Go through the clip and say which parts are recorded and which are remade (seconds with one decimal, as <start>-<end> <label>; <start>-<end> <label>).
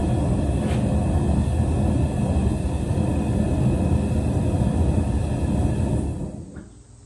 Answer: 0.0-7.1 recorded